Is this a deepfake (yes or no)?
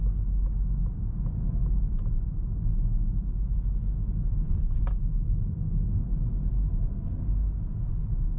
no